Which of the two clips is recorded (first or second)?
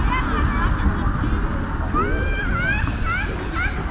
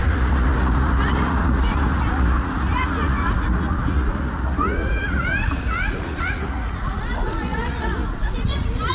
first